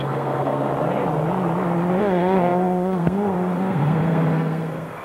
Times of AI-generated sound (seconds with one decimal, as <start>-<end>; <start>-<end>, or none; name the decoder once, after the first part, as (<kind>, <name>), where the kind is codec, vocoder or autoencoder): 0.0-0.7 (codec, SNAC); 2.0-5.0